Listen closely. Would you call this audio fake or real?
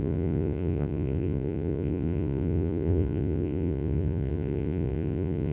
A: fake